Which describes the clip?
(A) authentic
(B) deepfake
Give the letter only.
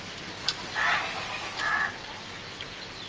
A